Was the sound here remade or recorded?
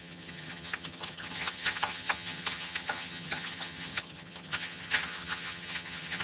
remade